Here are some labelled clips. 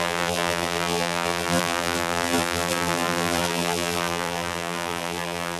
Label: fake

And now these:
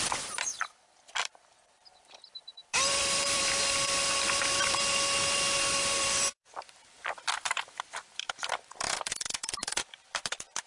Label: fake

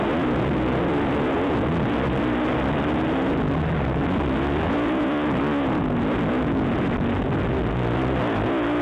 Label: real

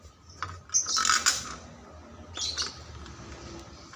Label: real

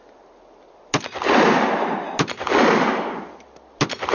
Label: real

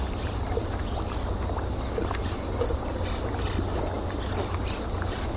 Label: real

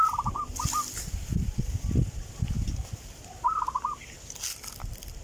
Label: fake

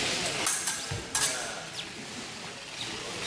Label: real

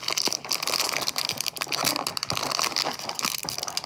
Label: real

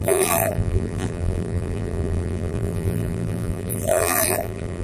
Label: fake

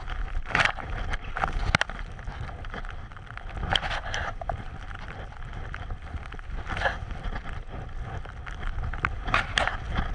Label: real